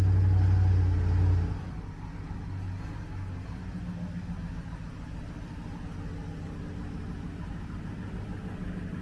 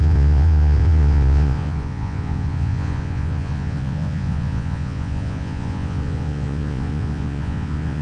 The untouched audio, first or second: first